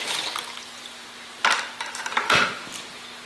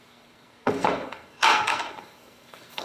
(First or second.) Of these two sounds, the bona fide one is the first